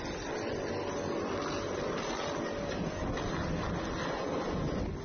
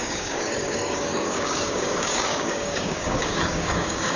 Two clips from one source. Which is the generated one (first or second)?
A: second